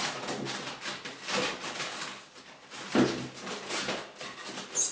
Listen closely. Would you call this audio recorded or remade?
recorded